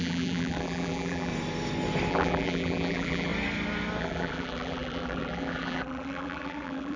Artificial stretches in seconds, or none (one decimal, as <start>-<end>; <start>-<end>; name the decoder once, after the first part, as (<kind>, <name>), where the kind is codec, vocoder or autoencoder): 0.0-1.3 (vocoder, BigVGAN v2); 2.1-3.3; 4.0-7.0